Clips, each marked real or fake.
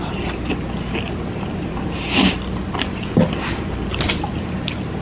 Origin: real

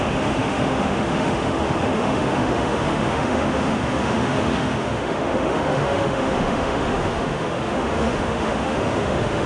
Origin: fake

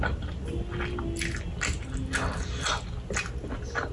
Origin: real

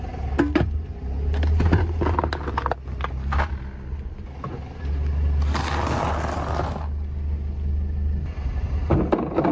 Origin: real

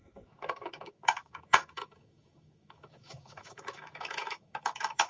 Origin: fake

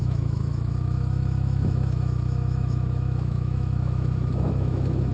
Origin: fake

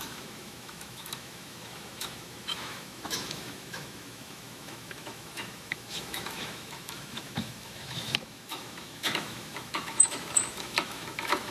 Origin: fake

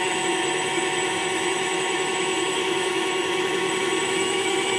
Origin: fake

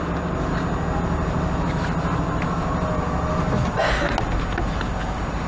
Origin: real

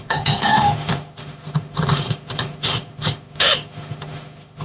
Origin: fake